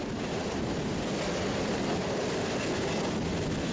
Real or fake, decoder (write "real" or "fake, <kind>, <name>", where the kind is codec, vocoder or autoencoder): real